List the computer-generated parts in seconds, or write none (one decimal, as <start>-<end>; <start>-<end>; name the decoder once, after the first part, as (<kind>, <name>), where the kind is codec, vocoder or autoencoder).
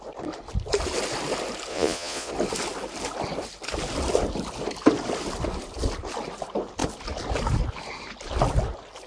1.7-2.3 (vocoder, Vocos)